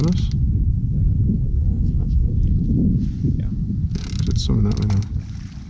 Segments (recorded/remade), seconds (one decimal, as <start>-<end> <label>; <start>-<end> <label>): 0.0-1.6 recorded; 1.6-2.3 remade; 2.3-5.7 recorded

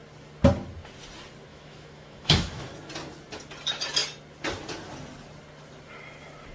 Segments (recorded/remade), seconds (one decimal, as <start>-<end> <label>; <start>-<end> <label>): 0.0-1.5 recorded; 1.5-2.6 remade; 2.6-6.5 recorded

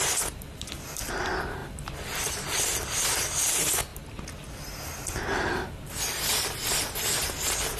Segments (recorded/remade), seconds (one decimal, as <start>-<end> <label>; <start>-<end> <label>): 0.0-7.8 recorded

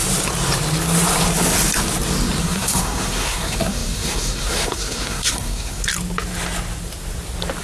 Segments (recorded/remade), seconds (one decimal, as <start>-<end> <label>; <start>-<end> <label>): 0.0-2.4 recorded; 2.4-5.9 remade; 5.9-7.6 recorded

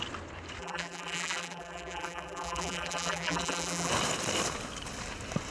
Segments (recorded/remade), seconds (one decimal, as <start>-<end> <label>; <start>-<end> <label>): 0.0-0.6 recorded; 0.6-3.9 remade; 3.9-5.5 recorded

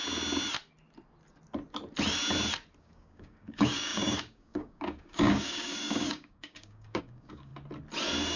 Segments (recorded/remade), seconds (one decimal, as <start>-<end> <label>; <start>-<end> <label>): 0.0-2.8 recorded; 2.8-7.5 remade; 7.5-8.4 recorded

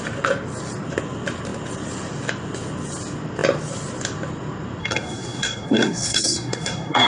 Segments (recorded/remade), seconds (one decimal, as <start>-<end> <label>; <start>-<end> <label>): 0.0-4.8 recorded; 4.8-7.1 remade